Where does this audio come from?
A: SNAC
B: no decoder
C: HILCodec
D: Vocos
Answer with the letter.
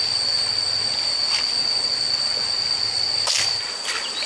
B